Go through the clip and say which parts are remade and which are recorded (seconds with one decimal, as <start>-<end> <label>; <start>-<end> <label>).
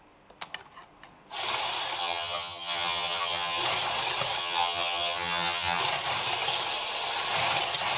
0.0-2.0 recorded; 2.0-3.6 remade; 3.6-4.4 recorded; 4.4-5.8 remade; 5.8-8.0 recorded